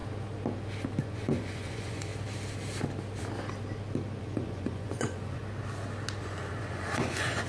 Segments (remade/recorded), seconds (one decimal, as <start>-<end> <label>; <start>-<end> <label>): 0.0-1.0 recorded; 1.0-2.1 remade; 2.1-4.2 recorded; 4.2-5.4 remade; 5.4-6.2 recorded; 6.2-7.5 remade